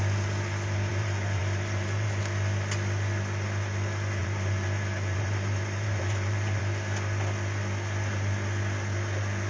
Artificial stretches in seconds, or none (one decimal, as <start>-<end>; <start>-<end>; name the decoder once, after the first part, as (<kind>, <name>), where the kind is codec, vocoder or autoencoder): 0.9-2.2 (vocoder, BigVGAN v2); 4.2-6.6